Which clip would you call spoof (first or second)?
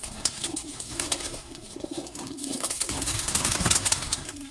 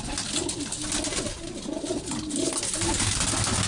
first